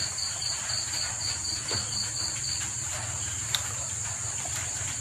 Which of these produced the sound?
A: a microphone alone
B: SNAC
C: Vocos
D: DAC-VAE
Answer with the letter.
A